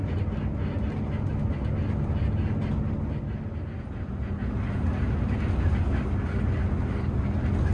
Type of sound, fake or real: real